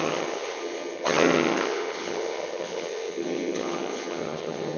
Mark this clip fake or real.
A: fake